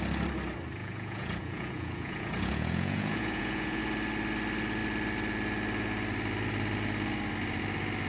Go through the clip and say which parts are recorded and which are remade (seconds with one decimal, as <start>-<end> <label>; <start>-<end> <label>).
0.0-0.8 recorded; 0.8-3.8 remade; 3.8-8.1 recorded